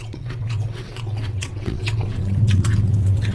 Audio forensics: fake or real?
fake